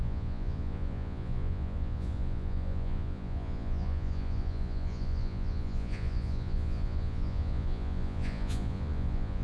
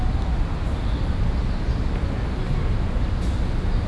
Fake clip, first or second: first